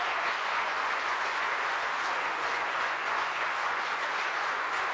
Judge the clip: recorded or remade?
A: remade